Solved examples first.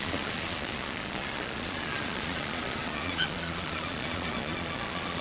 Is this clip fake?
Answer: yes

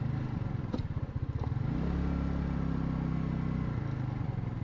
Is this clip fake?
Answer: no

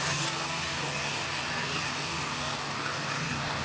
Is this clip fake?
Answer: yes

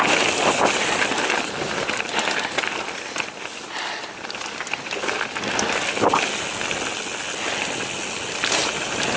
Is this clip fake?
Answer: no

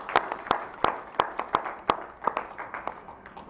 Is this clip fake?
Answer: no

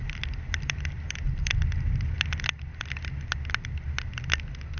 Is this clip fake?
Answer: no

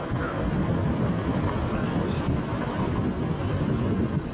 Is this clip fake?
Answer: no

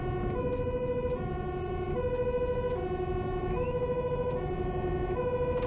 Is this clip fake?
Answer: no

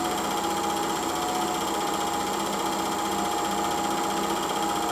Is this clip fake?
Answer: no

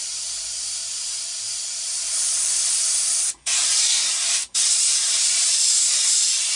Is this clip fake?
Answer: yes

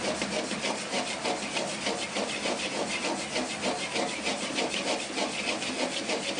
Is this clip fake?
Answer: no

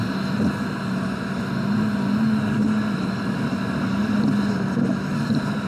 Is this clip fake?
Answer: no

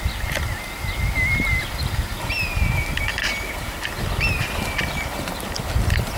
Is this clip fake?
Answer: no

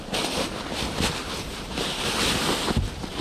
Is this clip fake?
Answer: no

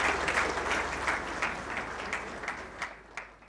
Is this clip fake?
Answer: no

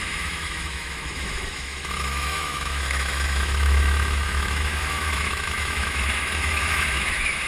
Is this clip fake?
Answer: yes